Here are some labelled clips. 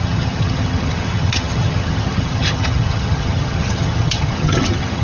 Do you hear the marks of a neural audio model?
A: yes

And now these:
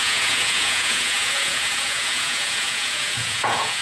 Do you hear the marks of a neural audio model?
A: yes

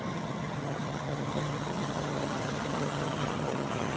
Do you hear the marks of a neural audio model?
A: yes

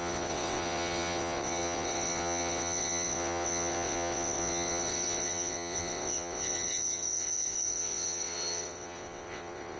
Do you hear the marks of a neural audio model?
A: yes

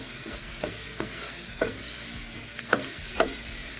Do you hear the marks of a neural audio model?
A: yes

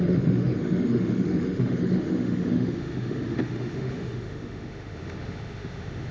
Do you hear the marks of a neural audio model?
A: yes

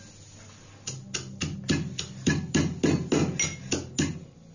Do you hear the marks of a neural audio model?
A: no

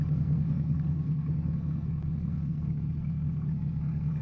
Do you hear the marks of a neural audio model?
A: yes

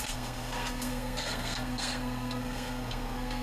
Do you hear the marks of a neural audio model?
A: yes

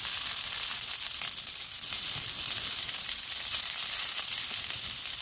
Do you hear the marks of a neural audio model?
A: no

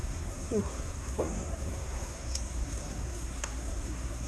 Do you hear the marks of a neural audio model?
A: yes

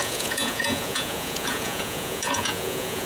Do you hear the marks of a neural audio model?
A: yes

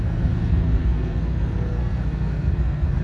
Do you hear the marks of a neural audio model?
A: yes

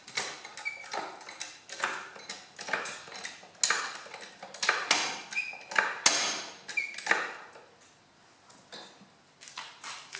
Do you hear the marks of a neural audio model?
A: no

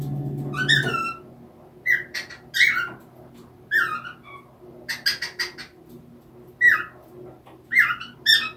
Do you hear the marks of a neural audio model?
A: no